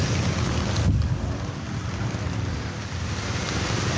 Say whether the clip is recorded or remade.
recorded